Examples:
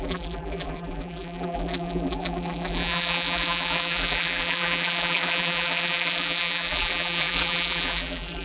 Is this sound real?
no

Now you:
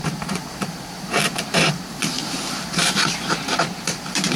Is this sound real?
no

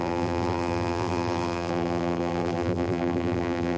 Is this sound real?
no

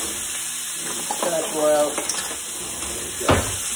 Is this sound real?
yes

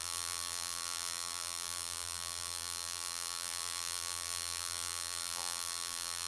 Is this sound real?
no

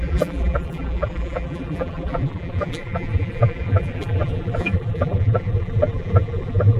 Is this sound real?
no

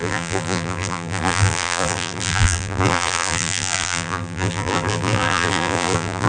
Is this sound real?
no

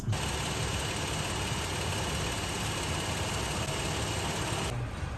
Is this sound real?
yes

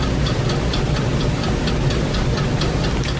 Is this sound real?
no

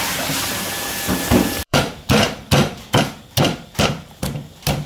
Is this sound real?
no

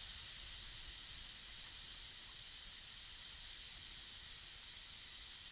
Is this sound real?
yes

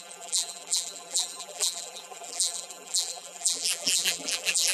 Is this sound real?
no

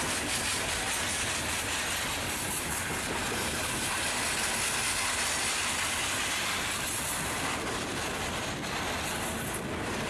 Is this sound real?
yes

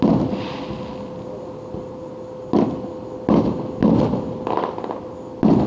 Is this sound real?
yes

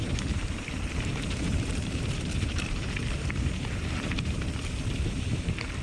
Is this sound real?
no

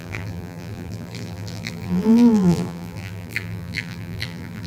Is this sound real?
no